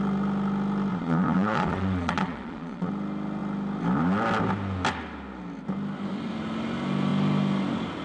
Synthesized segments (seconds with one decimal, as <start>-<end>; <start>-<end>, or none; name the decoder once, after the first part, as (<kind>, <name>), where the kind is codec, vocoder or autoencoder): 0.9-2.9 (vocoder, Vocos)

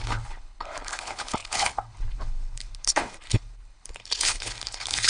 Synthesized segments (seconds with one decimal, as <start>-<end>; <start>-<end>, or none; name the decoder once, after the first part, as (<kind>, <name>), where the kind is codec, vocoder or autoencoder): 0.0-5.1 (codec, HILCodec)

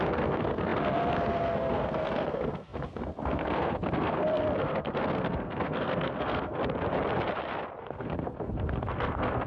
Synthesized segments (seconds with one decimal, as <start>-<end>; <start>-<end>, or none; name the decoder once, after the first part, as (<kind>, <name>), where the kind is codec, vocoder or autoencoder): 0.0-6.6 (codec, SNAC); 7.8-9.5